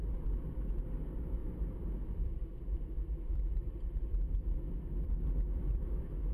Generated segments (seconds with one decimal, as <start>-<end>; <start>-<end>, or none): 1.4-5.2